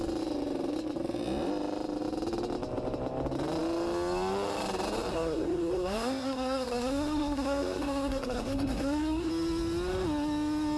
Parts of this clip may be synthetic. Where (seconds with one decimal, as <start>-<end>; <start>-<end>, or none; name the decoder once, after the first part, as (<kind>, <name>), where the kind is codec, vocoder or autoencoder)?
5.1-9.3 (codec, SNAC)